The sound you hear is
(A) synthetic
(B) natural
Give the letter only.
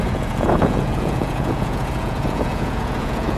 A